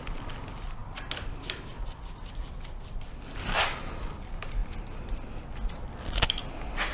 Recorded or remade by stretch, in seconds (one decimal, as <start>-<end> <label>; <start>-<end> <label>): 0.0-6.9 recorded